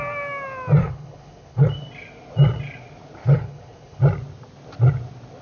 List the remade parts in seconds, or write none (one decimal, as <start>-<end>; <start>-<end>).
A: 0.8-1.7; 3.2-4.0